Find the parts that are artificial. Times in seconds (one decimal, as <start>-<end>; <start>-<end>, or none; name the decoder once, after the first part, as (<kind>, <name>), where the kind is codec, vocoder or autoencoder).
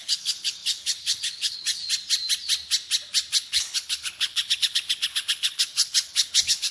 0.0-1.8 (codec, HILCodec); 3.3-6.7